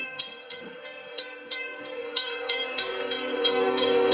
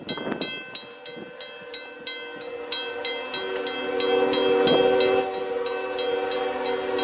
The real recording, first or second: second